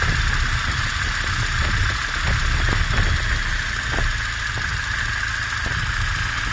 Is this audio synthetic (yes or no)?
no